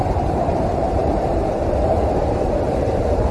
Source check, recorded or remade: remade